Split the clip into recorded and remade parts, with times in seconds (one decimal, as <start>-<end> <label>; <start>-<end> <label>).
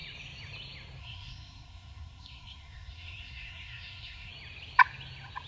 0.0-1.0 recorded; 1.0-4.3 remade; 4.3-5.5 recorded